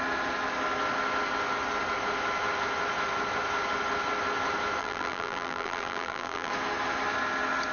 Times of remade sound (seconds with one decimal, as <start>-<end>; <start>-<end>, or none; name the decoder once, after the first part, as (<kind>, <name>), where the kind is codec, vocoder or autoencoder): 4.8-6.5 (vocoder, BigVGAN v2)